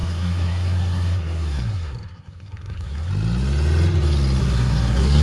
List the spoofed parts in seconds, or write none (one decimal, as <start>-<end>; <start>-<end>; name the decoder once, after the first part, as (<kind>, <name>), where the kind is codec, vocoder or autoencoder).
0.0-3.1 (codec, SNAC); 4.4-5.2